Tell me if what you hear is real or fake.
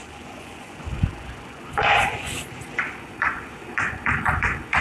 fake